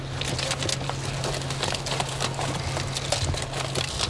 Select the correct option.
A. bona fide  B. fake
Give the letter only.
A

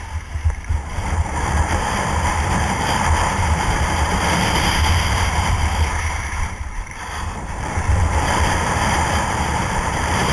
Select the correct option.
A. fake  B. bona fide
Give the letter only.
A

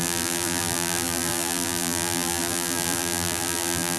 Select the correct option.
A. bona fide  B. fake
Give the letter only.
B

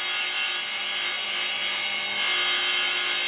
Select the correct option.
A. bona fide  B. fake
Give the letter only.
A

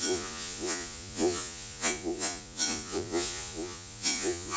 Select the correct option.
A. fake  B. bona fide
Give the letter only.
A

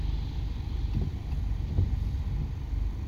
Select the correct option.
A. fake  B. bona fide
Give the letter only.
B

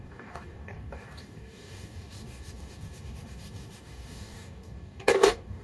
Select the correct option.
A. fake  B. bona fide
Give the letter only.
A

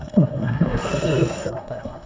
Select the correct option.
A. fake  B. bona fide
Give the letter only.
A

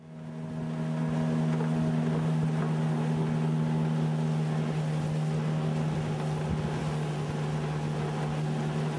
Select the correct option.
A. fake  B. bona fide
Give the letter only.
B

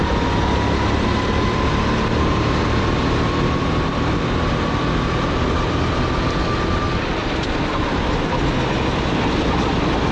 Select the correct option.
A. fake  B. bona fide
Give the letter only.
B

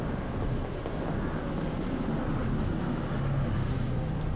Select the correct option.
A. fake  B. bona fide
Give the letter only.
B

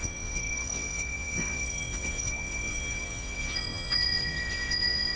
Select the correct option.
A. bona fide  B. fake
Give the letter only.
B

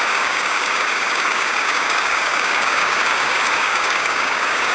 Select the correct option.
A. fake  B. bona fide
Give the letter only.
A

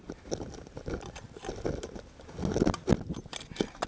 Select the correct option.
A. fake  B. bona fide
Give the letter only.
B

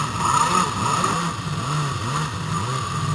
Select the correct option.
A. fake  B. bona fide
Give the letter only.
B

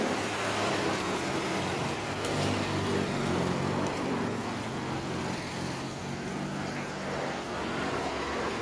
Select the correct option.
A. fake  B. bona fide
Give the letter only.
B